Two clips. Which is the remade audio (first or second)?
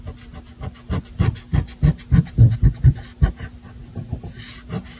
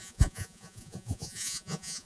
second